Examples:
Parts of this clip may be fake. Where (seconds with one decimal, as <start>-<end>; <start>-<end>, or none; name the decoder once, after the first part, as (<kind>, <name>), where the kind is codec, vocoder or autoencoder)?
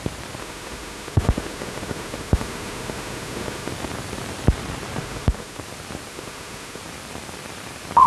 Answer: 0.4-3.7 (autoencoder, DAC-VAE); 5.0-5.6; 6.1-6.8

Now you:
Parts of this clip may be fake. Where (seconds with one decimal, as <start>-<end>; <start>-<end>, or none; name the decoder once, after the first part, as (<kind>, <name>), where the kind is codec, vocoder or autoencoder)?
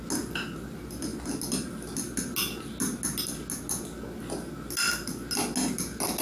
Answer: none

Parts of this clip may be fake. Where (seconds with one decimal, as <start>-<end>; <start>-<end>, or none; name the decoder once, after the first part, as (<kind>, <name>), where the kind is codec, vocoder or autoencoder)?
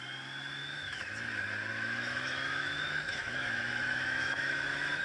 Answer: 0.6-1.1 (autoencoder, DAC-VAE); 1.7-5.0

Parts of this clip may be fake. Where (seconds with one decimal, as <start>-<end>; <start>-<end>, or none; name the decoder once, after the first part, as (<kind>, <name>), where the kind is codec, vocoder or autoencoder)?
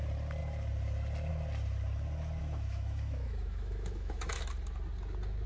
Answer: 2.4-4.3 (autoencoder, DAC-VAE)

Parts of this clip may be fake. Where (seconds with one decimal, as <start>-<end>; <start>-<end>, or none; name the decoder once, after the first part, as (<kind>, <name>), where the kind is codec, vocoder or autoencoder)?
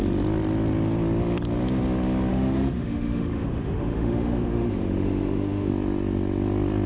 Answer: 2.3-5.7 (autoencoder, DAC-VAE)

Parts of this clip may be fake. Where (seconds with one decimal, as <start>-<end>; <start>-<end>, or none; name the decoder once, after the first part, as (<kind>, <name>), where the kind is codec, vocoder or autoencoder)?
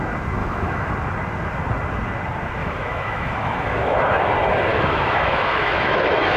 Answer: 0.4-0.9 (autoencoder, DAC-VAE); 2.6-4.2; 4.7-6.4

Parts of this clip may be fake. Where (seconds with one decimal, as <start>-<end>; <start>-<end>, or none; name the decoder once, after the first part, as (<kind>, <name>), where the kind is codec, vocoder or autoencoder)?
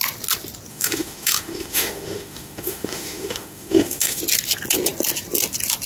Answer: 0.7-4.2 (autoencoder, DAC-VAE)